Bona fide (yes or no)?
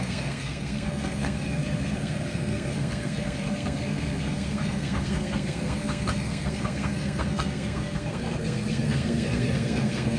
no